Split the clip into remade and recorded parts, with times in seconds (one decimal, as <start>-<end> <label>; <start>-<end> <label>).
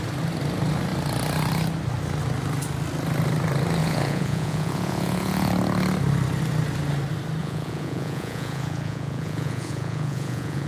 0.0-3.8 recorded; 3.8-5.5 remade; 5.5-7.4 recorded; 7.4-10.7 remade